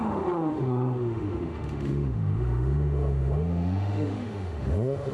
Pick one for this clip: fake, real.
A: fake